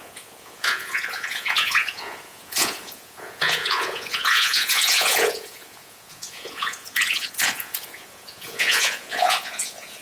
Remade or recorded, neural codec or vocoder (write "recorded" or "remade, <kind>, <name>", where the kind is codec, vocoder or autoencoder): remade, vocoder, Vocos